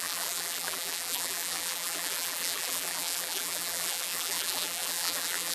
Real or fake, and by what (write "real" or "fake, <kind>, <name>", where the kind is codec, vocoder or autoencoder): fake, vocoder, BigVGAN v2